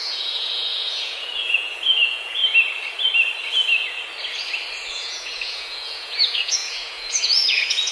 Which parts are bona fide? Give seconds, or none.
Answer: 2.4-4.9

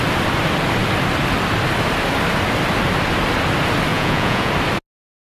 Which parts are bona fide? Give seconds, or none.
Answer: 0.0-3.9; 4.5-5.4

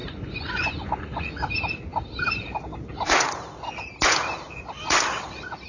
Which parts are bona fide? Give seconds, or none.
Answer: 1.4-5.7

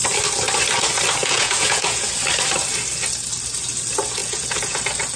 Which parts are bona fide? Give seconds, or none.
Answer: 0.0-1.2; 2.1-4.2; 4.8-5.2

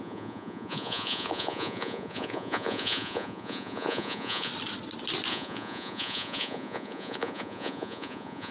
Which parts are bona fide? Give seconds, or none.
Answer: 4.5-5.3